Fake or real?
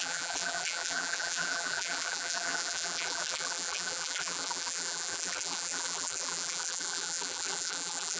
fake